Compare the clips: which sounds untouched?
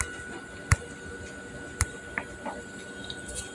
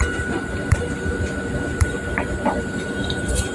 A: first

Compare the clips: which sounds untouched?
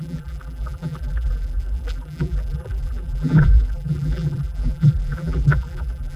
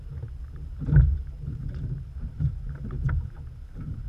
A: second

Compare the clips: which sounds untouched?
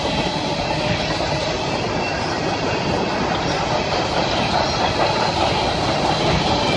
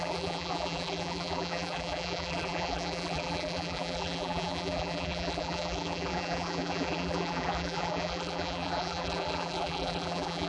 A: first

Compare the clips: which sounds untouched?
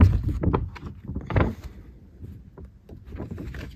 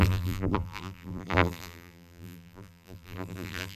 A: first